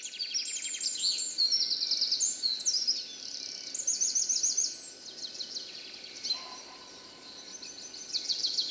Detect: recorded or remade recorded